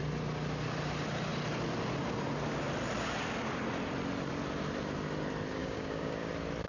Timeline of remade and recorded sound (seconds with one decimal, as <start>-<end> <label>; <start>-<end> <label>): 0.0-5.6 recorded; 5.6-6.3 remade; 6.3-6.7 recorded